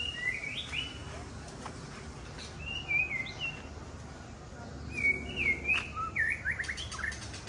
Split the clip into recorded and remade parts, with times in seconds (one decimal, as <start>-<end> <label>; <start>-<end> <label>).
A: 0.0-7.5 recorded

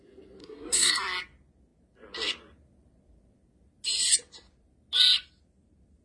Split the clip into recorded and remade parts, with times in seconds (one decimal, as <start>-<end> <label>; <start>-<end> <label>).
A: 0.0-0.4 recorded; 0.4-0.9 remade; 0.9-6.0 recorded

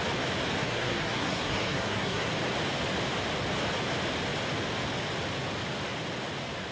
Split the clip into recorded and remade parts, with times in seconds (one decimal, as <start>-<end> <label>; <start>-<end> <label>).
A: 0.0-0.6 recorded; 0.6-2.3 remade; 2.3-6.7 recorded